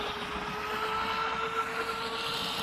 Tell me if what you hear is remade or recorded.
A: recorded